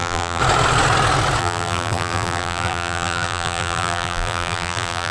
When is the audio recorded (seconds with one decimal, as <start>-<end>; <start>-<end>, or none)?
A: 0.4-1.4